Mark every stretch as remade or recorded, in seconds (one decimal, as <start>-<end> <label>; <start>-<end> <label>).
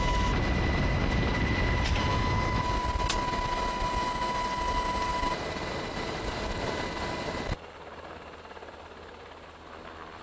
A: 0.0-2.1 recorded; 2.1-2.6 remade; 2.6-10.2 recorded